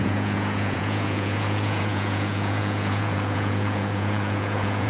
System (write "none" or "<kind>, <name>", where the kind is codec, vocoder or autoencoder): vocoder, Vocos